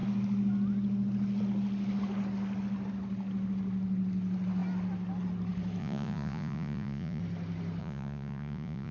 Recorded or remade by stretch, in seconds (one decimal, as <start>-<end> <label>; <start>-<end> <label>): 0.0-5.8 recorded; 5.8-7.2 remade; 7.2-7.8 recorded; 7.8-8.9 remade